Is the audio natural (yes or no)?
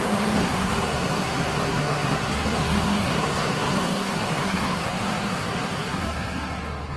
no